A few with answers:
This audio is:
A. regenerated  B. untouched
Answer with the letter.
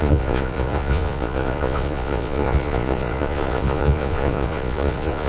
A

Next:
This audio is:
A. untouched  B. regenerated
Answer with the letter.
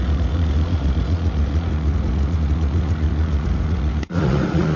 B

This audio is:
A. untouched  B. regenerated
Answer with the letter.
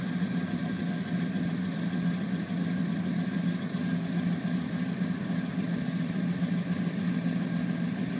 A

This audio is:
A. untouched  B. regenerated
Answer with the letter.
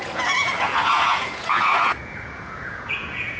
B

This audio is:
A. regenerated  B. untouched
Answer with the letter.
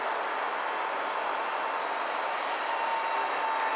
B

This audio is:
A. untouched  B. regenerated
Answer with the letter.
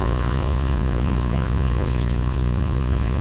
B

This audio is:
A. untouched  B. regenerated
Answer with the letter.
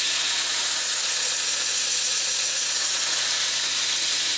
B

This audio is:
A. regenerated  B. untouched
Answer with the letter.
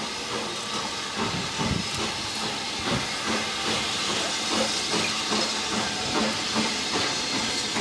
B